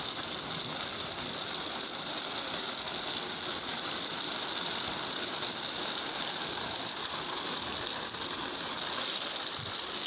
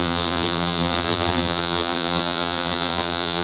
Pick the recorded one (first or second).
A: first